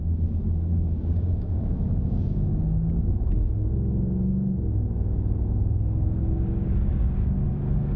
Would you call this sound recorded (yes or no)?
no